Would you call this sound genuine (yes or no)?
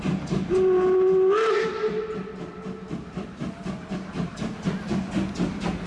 yes